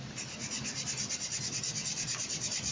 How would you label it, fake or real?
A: real